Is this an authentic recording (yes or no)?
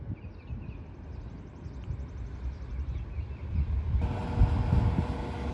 yes